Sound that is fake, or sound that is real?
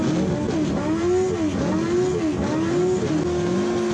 real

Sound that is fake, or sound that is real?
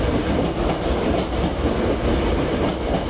real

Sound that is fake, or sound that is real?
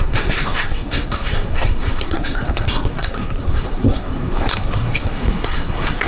fake